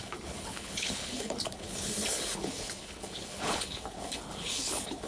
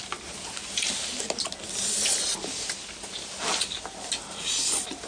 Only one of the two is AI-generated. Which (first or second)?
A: first